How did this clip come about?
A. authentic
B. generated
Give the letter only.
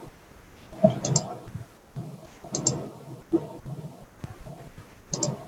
A